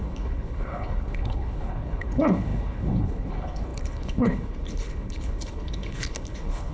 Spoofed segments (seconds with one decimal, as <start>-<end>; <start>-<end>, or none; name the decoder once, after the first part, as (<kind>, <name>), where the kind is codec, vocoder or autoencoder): 0.0-6.7 (codec, HILCodec)

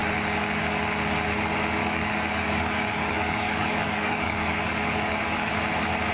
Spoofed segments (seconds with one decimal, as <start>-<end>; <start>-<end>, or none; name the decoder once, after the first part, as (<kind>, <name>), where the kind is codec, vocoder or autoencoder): 1.8-5.5 (codec, DAC)

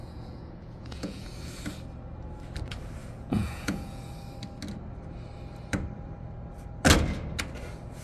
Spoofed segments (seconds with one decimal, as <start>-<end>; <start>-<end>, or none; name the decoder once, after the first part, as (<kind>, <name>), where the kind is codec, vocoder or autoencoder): 0.0-1.3 (vocoder, Vocos); 3.0-4.1

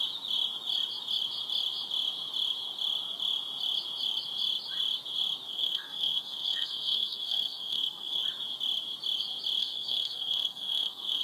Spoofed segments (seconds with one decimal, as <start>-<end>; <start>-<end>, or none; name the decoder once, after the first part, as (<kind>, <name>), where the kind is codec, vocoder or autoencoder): 5.5-8.2 (codec, SNAC); 9.6-11.2

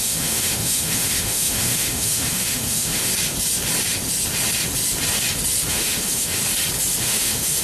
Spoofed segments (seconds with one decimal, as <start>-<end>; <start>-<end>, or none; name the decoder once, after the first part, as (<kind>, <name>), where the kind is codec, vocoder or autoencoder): 0.0-3.1 (autoencoder, DAC-VAE); 5.7-6.4; 7.0-7.6

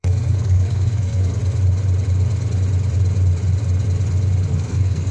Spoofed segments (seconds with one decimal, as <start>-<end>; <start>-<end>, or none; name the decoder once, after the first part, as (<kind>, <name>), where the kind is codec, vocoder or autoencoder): 0.0-1.4 (codec, SNAC); 4.5-5.1